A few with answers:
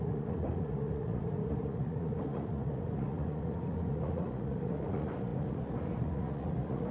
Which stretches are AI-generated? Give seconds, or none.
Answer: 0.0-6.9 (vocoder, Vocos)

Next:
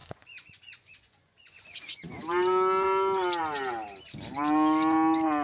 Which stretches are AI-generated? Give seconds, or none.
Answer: 0.0-2.0 (vocoder, Vocos)